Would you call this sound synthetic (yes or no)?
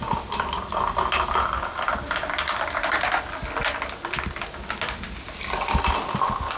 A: no